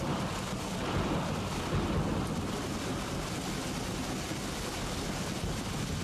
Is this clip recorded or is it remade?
recorded